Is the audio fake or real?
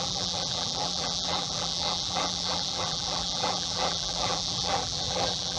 fake